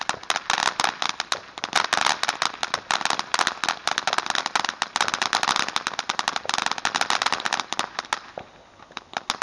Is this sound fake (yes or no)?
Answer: no